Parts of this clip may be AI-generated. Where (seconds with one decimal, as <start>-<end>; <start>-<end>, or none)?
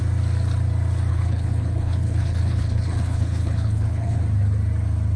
1.1-4.2